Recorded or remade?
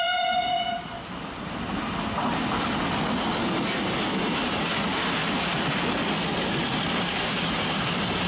recorded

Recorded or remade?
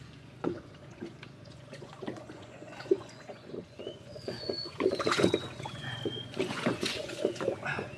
remade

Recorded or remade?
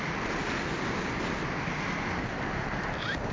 recorded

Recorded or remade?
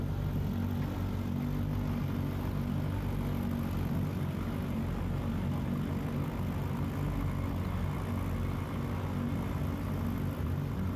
recorded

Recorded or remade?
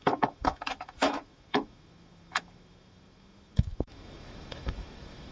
remade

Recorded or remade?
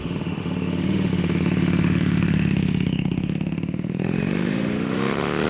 remade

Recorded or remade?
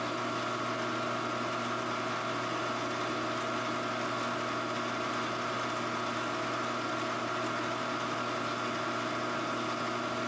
recorded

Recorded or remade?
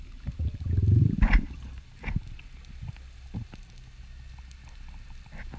recorded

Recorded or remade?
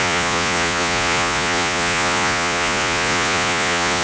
remade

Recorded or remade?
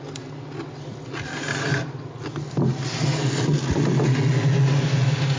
recorded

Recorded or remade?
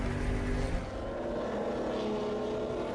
recorded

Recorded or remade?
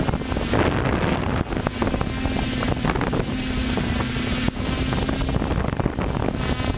recorded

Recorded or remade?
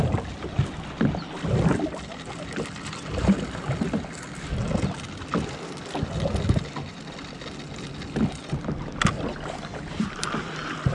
recorded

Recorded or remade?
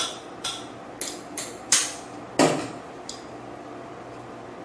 recorded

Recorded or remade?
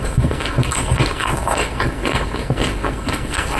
remade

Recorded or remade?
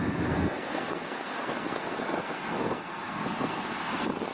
remade